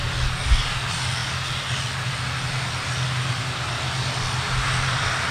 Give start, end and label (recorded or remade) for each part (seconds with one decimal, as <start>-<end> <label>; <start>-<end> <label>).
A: 0.0-5.3 recorded

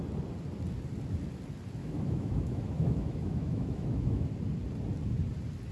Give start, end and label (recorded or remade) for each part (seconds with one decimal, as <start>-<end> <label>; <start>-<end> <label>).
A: 0.0-1.8 recorded; 1.8-4.3 remade; 4.3-5.7 recorded

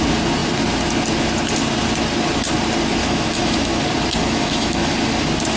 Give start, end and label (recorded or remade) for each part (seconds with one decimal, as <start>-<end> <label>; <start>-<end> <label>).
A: 0.0-3.0 recorded; 3.0-3.8 remade; 3.8-4.2 recorded; 4.2-4.9 remade; 4.9-5.6 recorded